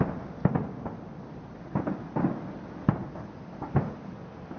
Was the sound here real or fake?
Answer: real